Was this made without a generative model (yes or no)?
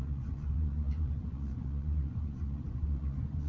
no